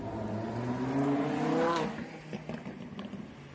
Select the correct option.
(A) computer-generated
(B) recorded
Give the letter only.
B